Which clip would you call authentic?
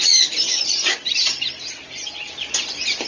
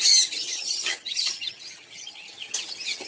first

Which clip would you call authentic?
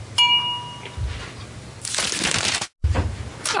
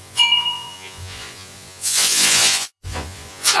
first